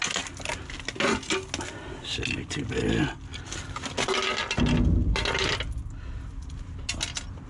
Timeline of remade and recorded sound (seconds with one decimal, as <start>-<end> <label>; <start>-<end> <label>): 0.0-7.5 recorded